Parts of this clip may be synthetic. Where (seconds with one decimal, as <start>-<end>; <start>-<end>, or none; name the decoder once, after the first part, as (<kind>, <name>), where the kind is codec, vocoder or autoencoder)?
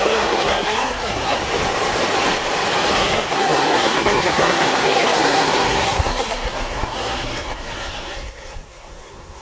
0.0-1.4 (codec, SNAC); 2.9-9.4